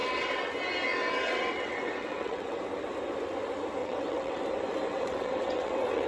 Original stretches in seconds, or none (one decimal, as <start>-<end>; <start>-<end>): 0.5-0.9; 2.6-3.8; 4.4-4.9